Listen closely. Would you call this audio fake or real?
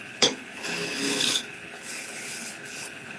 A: fake